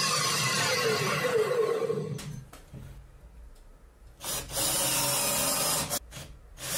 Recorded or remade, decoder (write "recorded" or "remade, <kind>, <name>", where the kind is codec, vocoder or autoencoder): recorded